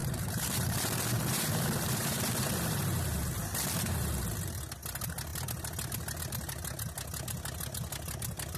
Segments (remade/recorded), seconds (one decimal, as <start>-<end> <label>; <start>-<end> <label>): 0.0-4.1 remade; 4.1-8.6 recorded